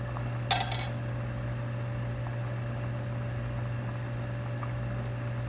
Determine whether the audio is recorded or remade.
recorded